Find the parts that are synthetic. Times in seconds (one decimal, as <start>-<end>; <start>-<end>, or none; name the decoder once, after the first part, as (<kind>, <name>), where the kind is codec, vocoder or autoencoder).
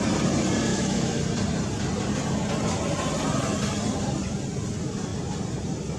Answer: 0.7-1.2 (autoencoder, DAC-VAE)